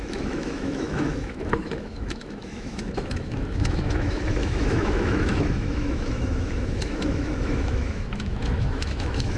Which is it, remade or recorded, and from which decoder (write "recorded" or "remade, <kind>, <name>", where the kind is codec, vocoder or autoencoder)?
remade, autoencoder, DAC-VAE